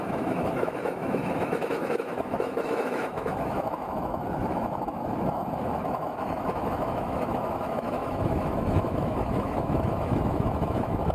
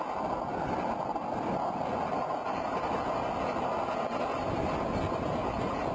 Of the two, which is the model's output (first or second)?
first